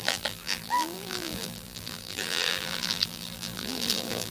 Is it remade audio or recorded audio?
remade